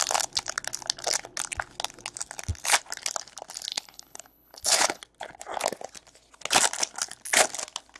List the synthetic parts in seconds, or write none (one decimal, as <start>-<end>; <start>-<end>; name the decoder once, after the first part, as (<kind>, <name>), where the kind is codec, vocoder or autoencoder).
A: 3.7-5.0 (codec, HILCodec)